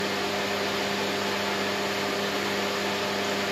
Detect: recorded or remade recorded